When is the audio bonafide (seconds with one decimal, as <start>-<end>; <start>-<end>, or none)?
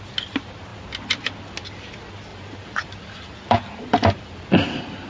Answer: 0.0-2.3; 4.2-5.1